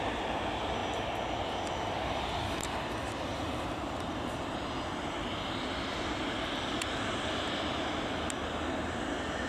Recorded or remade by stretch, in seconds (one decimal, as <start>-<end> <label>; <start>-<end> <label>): 0.0-3.3 recorded; 3.3-7.8 remade; 7.8-9.5 recorded